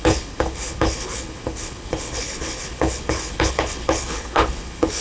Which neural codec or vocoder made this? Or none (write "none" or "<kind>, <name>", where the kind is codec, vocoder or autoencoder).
codec, HILCodec